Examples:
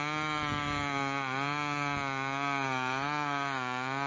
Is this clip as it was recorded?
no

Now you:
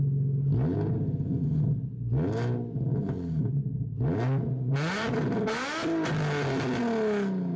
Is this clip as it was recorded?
yes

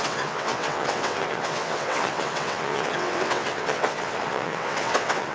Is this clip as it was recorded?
no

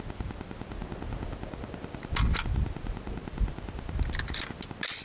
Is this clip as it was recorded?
yes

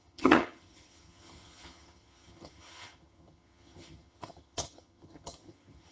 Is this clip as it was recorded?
no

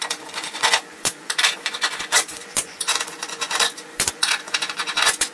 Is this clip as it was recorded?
no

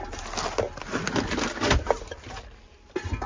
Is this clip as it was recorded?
yes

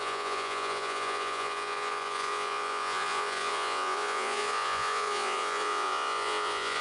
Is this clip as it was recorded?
no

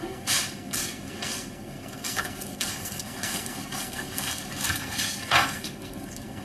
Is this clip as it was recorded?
no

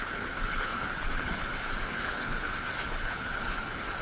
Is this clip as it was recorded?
no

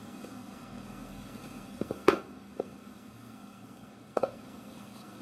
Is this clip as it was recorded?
no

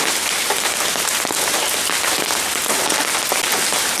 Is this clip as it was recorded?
yes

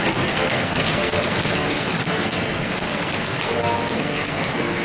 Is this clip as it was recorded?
no